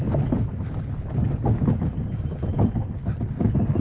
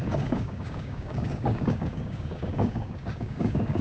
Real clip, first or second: first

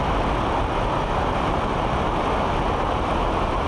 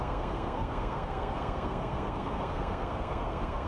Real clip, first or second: first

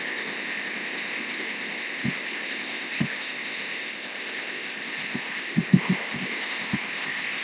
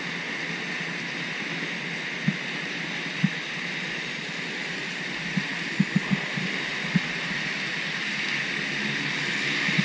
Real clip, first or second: second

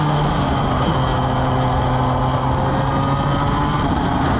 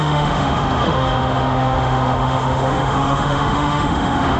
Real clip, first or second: first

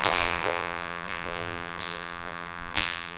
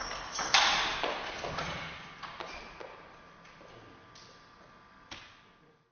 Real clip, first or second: second